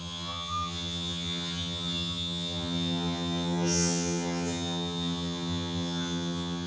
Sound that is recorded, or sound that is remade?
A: remade